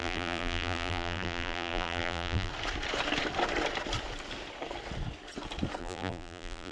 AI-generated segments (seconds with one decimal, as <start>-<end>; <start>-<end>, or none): 0.0-2.5; 5.8-6.7